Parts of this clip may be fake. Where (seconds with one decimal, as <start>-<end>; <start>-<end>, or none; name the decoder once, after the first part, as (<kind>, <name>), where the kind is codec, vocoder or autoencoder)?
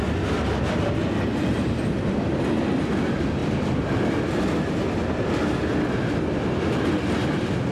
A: 3.4-6.5 (vocoder, BigVGAN v2)